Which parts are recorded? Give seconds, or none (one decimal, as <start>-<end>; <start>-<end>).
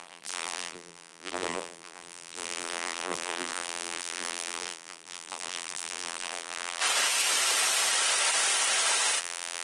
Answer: 6.8-9.2